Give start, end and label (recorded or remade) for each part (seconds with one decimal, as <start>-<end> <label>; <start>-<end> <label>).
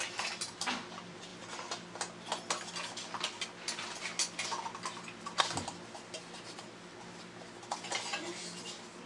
0.0-9.1 recorded